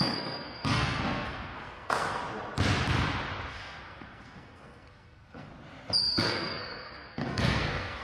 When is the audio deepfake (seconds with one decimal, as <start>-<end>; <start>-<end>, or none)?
0.0-2.2; 3.5-5.5; 6.0-8.0